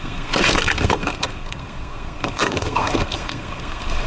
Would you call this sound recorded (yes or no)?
no